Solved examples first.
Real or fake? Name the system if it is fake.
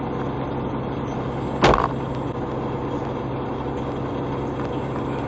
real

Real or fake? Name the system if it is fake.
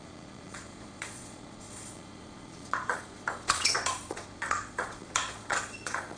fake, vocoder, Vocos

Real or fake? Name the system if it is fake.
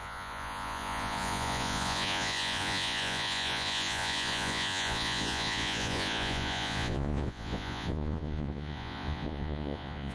fake, vocoder, Vocos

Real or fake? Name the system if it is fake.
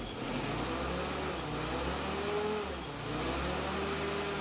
real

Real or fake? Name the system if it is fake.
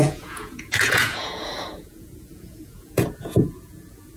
fake, vocoder, Vocos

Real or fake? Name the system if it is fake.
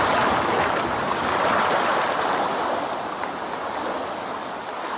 real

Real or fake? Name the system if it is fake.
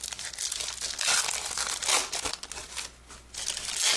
real